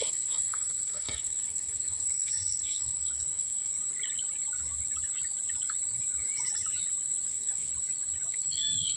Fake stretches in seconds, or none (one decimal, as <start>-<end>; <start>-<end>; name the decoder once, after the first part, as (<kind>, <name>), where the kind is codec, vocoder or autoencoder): 0.0-3.7 (codec, SNAC); 7.3-7.7; 8.3-9.0